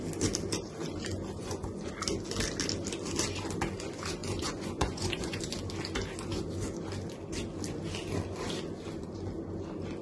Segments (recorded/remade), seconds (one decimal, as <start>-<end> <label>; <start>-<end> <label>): 0.0-1.4 recorded; 1.4-1.9 remade; 1.9-4.2 recorded; 4.2-5.4 remade; 5.4-10.0 recorded